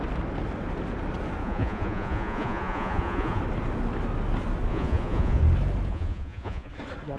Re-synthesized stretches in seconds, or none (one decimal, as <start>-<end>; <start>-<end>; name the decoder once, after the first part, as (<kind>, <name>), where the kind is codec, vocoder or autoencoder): 1.4-3.4 (vocoder, Vocos); 4.7-5.4; 5.9-6.7